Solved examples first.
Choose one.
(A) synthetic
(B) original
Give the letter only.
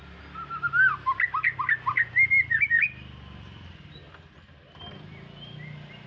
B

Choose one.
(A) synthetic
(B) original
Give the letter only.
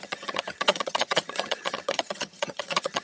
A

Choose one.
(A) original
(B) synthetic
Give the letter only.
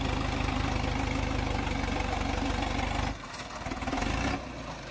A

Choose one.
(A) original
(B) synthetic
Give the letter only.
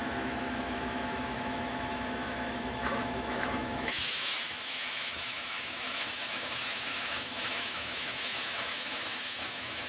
B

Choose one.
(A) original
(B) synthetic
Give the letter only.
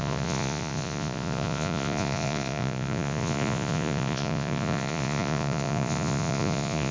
B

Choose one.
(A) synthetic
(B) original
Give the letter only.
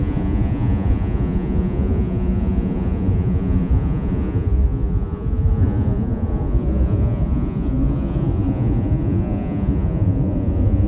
A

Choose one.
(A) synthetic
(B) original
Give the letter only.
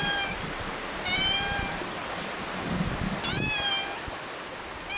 B